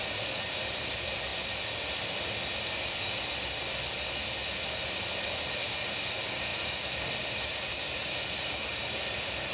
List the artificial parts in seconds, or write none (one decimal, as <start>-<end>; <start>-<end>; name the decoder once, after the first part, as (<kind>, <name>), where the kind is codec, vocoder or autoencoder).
none